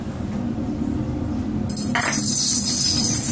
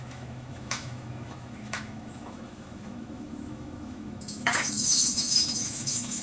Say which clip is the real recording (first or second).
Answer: first